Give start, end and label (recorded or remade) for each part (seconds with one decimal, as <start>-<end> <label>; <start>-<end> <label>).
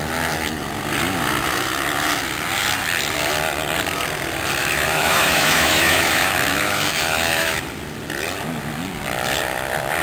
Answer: 0.0-4.6 recorded; 4.6-7.6 remade; 7.6-10.0 recorded